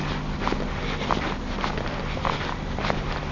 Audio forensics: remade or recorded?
recorded